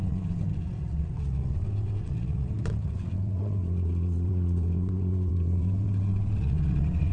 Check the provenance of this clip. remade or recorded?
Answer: remade